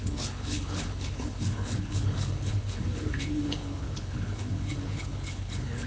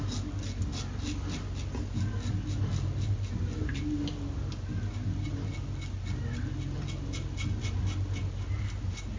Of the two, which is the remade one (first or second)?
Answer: first